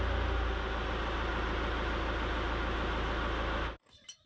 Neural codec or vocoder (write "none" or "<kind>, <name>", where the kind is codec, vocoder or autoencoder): none